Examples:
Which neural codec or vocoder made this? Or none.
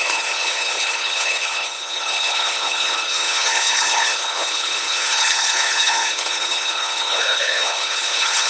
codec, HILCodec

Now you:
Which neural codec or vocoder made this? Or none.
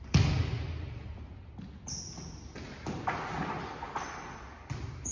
none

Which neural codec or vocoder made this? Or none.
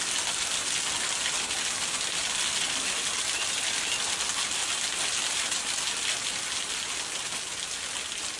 none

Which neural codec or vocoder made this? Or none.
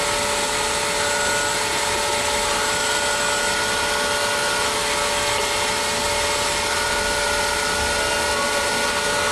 none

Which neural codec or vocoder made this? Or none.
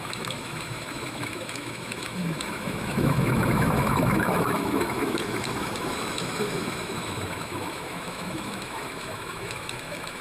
autoencoder, DAC-VAE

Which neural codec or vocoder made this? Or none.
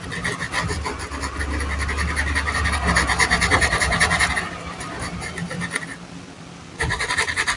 none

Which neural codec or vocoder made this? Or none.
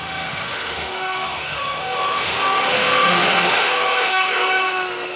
autoencoder, DAC-VAE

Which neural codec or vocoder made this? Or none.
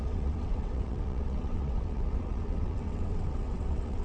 vocoder, WaveNeXt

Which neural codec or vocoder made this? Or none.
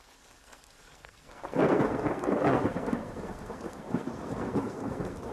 codec, SNAC